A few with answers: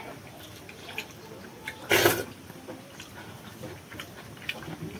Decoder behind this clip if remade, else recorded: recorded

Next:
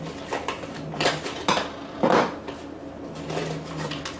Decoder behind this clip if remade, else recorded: recorded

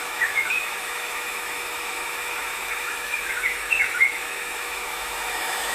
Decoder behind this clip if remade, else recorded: remade, autoencoder, DAC-VAE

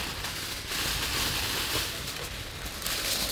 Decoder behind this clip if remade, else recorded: recorded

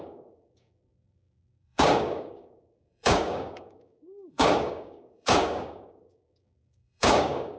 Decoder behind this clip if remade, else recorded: remade, codec, DAC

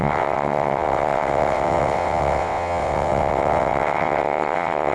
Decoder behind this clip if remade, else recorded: remade, vocoder, WaveNeXt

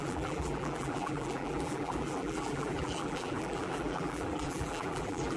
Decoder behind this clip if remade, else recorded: remade, vocoder, BigVGAN v2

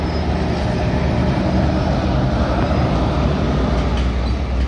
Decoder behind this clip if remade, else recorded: recorded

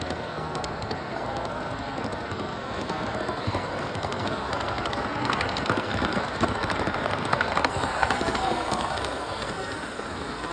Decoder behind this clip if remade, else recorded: remade, codec, SNAC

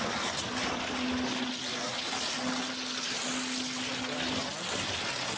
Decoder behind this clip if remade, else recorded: recorded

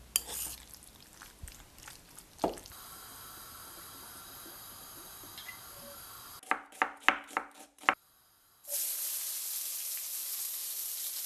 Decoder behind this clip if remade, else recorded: recorded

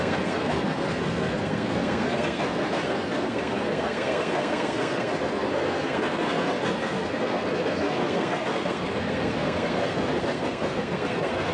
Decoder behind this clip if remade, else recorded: remade, codec, SNAC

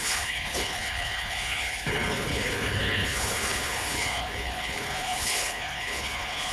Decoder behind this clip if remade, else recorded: remade, codec, HILCodec